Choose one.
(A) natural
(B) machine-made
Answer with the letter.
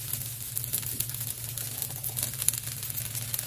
A